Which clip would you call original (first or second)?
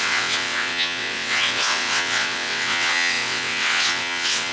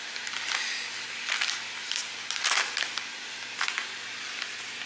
second